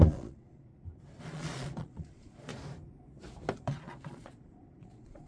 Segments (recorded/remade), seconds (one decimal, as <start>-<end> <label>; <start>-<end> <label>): 0.0-0.7 remade; 0.7-1.2 recorded; 1.2-2.5 remade; 2.5-3.5 recorded; 3.5-5.3 remade